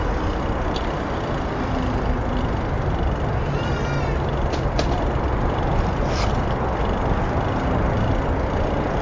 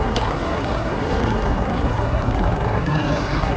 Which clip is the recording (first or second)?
first